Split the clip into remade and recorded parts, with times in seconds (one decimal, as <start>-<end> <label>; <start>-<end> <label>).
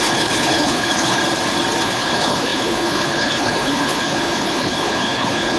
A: 0.0-1.2 remade; 1.2-1.8 recorded; 1.8-5.6 remade